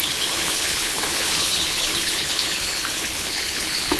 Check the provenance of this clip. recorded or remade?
remade